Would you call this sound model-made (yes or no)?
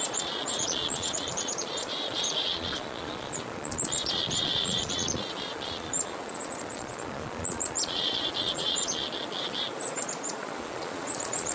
yes